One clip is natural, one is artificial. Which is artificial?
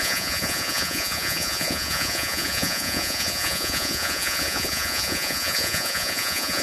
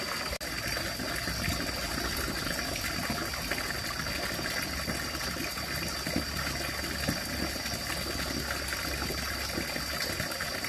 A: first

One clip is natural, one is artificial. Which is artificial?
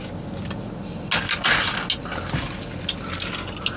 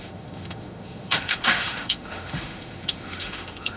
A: second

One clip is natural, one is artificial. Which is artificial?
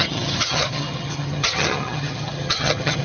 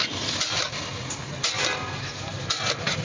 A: first